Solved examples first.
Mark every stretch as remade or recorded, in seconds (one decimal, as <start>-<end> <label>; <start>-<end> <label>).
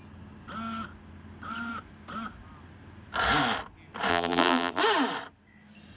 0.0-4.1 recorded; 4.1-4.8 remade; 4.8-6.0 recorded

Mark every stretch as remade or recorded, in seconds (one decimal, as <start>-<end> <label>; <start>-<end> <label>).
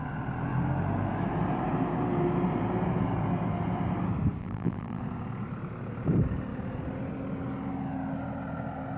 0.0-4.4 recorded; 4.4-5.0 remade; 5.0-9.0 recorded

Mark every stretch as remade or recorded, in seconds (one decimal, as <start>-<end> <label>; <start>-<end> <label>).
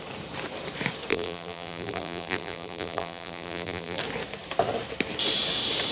0.0-1.1 recorded; 1.1-4.0 remade; 4.0-5.9 recorded